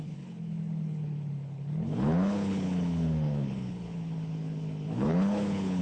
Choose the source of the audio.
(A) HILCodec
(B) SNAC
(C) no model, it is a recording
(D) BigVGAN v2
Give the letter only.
A